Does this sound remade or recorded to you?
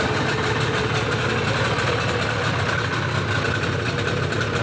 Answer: recorded